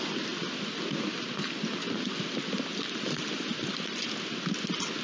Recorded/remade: recorded